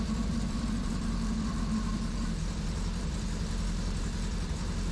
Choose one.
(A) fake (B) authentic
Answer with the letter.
A